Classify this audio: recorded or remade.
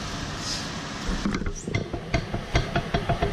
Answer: recorded